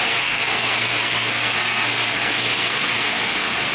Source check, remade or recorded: remade